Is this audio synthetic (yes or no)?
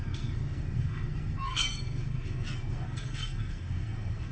yes